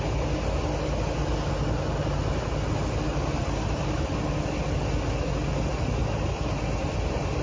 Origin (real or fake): real